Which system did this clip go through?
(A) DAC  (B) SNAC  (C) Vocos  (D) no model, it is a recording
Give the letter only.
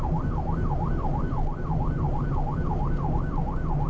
D